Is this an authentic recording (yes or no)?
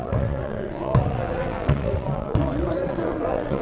no